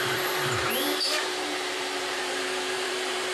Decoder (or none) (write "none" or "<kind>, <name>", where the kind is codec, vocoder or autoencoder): vocoder, BigVGAN v2